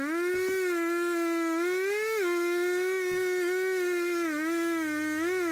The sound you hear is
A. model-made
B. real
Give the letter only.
B